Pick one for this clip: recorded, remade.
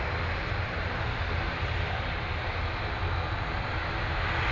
recorded